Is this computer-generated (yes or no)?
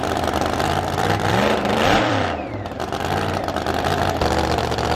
yes